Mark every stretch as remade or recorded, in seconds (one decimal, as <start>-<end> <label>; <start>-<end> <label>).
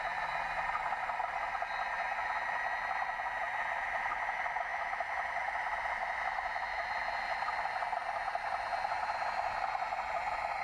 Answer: 0.0-10.6 recorded